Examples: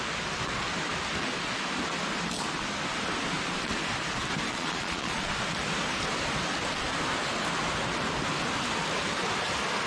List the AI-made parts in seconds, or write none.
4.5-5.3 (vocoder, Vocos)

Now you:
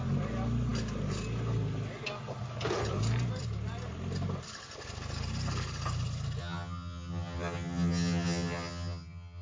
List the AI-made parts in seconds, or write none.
6.4-9.4 (vocoder, HiFi-GAN)

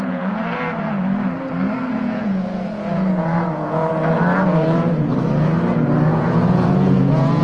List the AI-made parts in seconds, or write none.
0.0-0.4 (vocoder, Vocos); 1.9-3.8; 4.4-5.1; 6.1-7.4